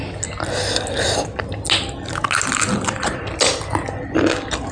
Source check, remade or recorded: recorded